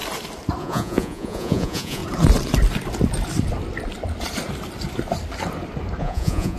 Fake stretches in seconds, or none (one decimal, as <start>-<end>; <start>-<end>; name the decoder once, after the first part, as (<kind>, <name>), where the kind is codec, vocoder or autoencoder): 0.6-2.0 (vocoder, Vocos); 6.0-6.6